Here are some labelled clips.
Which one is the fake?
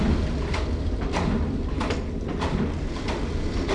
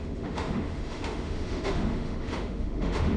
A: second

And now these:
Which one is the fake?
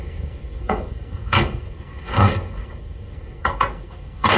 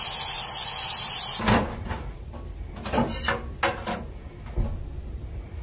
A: first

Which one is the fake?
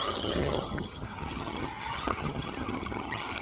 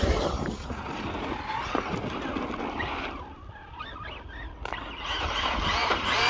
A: first